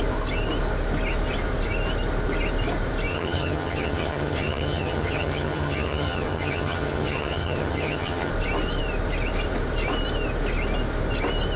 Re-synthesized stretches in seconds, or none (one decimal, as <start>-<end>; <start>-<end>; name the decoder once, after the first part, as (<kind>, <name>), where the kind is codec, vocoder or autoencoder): 3.1-8.3 (vocoder, HiFi-GAN)